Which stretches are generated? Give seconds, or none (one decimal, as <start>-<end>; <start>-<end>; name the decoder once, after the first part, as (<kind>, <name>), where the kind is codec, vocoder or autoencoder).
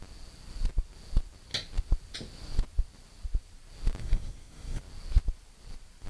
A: 4.0-4.8 (codec, SNAC)